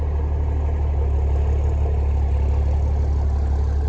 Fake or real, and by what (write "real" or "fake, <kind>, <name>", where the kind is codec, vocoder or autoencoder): real